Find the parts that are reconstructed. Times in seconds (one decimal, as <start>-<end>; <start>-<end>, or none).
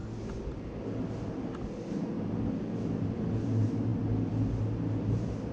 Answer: none